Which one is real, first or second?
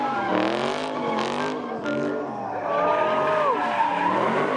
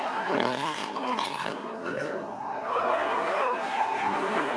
first